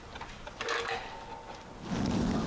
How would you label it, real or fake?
real